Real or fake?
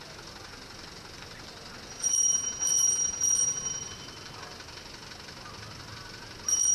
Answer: real